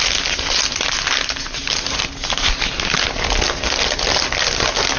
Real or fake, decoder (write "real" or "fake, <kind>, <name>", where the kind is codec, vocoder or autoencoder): real